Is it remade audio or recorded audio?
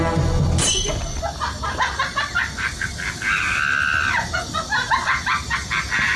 recorded